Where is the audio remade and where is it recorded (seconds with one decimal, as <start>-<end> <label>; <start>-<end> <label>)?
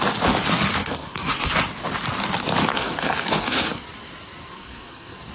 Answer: 0.0-0.8 recorded; 0.8-1.3 remade; 1.3-2.7 recorded; 2.7-3.8 remade; 3.8-4.4 recorded; 4.4-5.3 remade